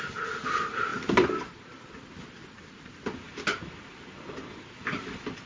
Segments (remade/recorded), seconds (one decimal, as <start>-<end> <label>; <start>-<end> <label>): 0.0-5.5 recorded